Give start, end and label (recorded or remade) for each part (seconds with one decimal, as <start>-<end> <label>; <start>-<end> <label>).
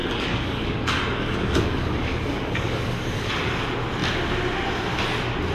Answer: 0.0-3.3 remade; 3.3-5.5 recorded